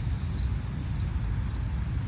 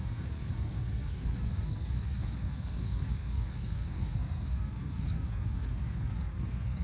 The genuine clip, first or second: first